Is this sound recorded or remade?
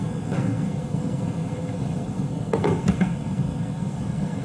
remade